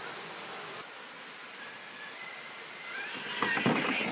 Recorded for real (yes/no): yes